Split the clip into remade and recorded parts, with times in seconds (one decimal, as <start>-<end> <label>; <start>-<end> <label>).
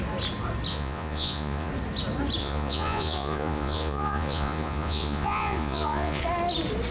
0.0-0.7 recorded; 0.7-1.7 remade; 1.7-2.4 recorded; 2.4-6.2 remade; 6.2-6.9 recorded